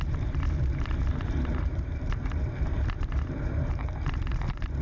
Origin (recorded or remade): remade